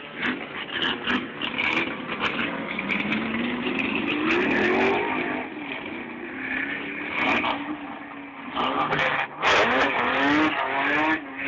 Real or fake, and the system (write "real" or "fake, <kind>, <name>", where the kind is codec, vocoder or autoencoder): real